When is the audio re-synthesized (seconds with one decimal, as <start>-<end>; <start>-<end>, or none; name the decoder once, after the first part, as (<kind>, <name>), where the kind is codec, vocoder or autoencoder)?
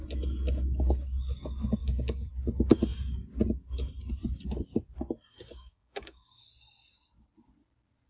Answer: 1.8-2.3 (codec, DAC); 5.3-6.4